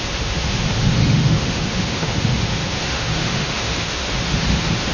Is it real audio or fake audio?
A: fake